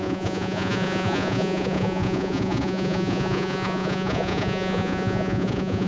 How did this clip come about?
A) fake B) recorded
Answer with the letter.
A